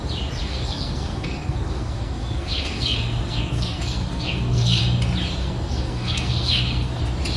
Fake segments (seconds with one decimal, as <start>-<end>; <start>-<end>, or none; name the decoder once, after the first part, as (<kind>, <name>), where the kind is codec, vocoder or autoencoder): 0.4-4.8 (codec, SNAC); 5.4-7.0